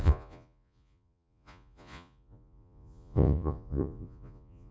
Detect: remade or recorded remade